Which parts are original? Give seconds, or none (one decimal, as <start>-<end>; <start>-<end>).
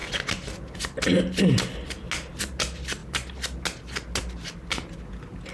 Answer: 0.0-5.5